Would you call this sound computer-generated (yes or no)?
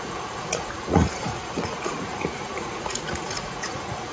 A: yes